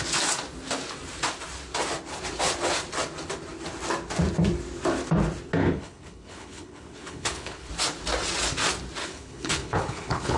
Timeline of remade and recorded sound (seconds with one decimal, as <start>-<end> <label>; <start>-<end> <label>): 0.0-5.6 recorded; 5.6-7.7 remade; 7.7-9.0 recorded; 9.0-10.4 remade